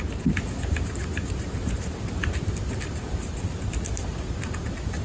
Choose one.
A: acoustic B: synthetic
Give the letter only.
A